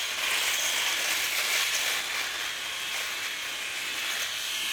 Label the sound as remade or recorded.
recorded